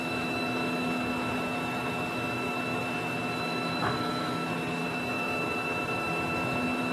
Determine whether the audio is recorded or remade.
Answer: remade